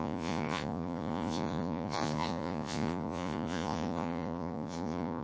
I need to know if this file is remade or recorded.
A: remade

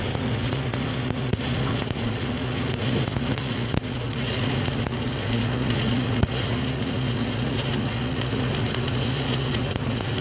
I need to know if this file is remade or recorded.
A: remade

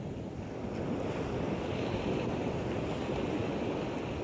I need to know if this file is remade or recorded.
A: recorded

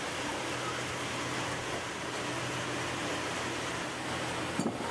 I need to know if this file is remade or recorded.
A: recorded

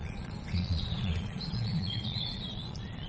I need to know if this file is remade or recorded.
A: remade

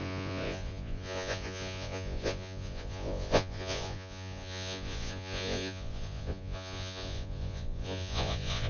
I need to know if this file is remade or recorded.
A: remade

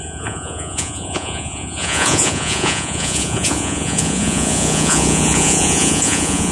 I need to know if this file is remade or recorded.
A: remade